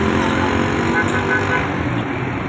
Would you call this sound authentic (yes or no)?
yes